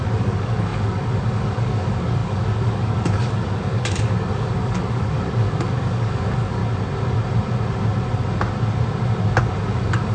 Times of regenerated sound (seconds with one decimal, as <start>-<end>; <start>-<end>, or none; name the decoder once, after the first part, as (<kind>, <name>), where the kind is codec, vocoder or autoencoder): 0.0-6.6 (codec, DAC); 9.4-10.1